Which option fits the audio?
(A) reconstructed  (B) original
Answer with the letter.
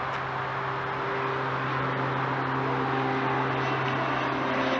B